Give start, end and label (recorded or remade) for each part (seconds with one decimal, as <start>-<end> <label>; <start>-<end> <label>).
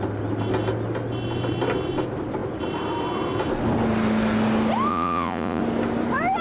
0.0-4.9 recorded; 4.9-5.6 remade; 5.6-6.4 recorded